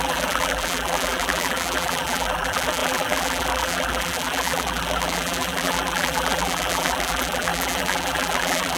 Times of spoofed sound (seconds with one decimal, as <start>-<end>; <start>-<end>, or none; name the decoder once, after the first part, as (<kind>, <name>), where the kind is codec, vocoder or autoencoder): 0.0-8.8 (vocoder, BigVGAN v2)